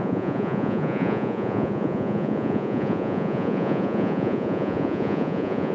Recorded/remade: remade